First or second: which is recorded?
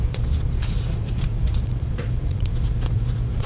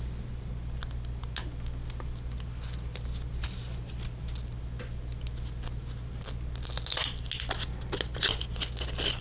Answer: second